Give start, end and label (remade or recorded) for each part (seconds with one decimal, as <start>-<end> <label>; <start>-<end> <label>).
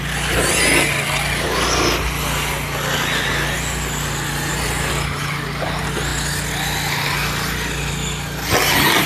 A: 0.0-9.1 recorded